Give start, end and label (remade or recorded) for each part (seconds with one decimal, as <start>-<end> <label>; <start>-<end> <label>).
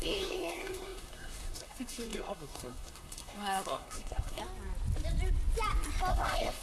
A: 0.0-4.4 remade; 4.4-6.1 recorded; 6.1-6.6 remade